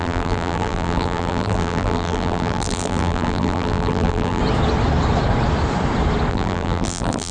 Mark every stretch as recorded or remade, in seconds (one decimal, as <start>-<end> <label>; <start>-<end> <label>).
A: 0.0-4.4 remade; 4.4-6.3 recorded; 6.3-7.3 remade